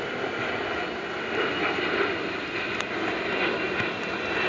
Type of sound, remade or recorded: recorded